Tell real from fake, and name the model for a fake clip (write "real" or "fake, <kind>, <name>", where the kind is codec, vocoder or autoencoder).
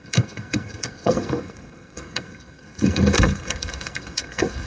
fake, codec, SNAC